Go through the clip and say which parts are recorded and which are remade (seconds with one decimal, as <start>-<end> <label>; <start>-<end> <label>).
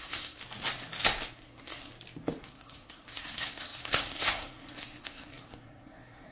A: 0.0-0.4 remade; 0.4-1.3 recorded; 1.3-1.9 remade; 1.9-2.4 recorded; 2.4-6.3 remade